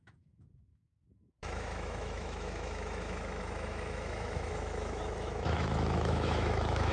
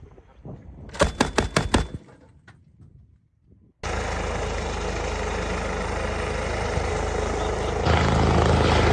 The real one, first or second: second